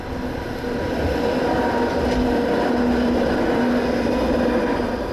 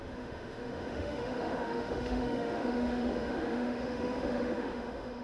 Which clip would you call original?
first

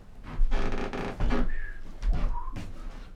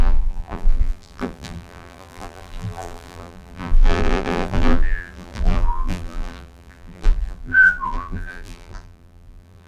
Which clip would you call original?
first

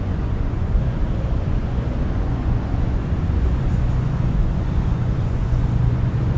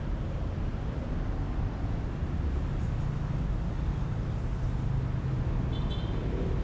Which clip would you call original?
second